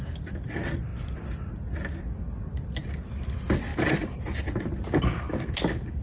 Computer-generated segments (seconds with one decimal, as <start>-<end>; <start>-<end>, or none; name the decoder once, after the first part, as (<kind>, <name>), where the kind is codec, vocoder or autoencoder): none